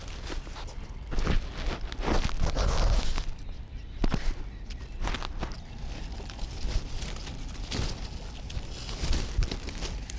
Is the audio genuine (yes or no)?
yes